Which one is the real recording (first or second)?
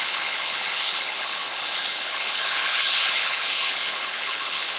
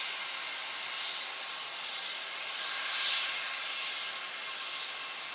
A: second